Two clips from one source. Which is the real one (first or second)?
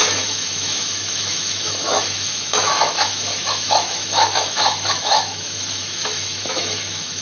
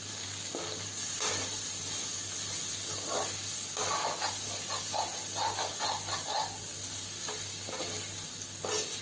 second